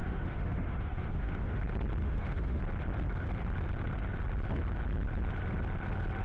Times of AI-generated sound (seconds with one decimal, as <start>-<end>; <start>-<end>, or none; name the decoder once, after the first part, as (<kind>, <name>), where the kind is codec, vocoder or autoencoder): 0.0-1.6 (autoencoder, DAC-VAE); 2.0-2.6